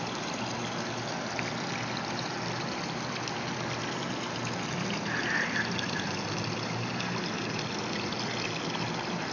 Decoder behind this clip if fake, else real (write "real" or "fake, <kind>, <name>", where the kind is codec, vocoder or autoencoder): real